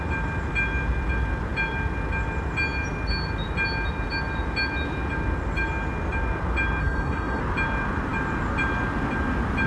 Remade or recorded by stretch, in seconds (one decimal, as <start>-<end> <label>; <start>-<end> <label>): 0.0-6.8 recorded; 6.8-7.4 remade; 7.4-9.7 recorded